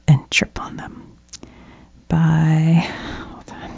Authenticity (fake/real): real